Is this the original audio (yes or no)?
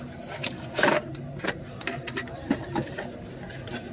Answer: yes